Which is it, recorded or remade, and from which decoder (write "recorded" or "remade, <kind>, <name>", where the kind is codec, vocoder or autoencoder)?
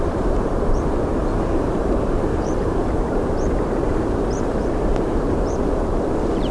remade, vocoder, BigVGAN v2